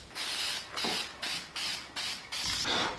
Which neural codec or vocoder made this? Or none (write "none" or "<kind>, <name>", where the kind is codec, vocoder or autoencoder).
none